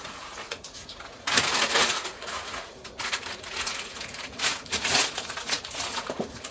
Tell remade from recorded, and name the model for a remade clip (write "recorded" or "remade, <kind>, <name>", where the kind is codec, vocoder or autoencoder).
remade, vocoder, Vocos